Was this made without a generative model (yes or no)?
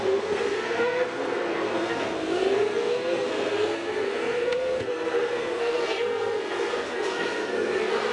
no